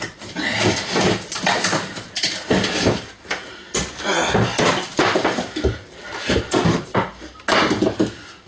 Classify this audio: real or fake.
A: real